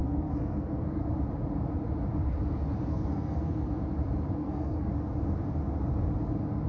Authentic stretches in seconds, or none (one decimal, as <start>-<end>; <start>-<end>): 1.0-2.9; 3.7-4.4; 4.9-6.7